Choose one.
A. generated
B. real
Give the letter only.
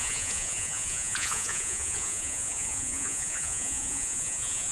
A